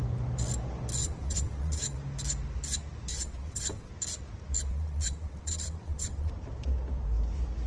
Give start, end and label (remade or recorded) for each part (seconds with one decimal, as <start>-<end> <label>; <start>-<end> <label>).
0.0-1.0 recorded; 1.0-2.0 remade; 2.0-3.1 recorded; 3.1-3.9 remade; 3.9-4.7 recorded; 4.7-6.3 remade; 6.3-7.7 recorded